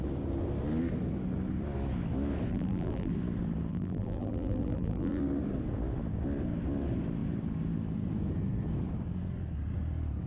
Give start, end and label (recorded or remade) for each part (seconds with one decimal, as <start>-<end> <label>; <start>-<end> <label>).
0.0-2.5 recorded; 2.5-3.1 remade; 3.1-3.7 recorded; 3.7-5.2 remade; 5.2-10.3 recorded